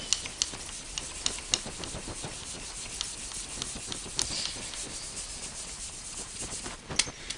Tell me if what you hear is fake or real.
real